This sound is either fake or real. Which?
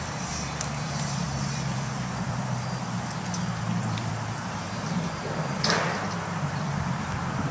fake